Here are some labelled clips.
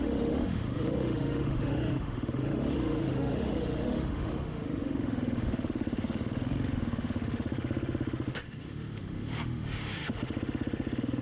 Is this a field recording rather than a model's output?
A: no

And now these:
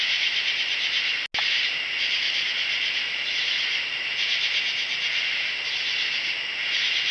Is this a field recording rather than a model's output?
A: yes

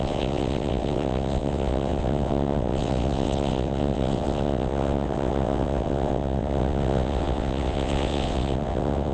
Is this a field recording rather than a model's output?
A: no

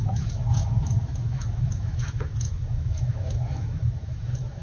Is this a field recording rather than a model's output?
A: no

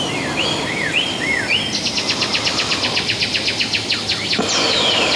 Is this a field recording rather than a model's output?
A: yes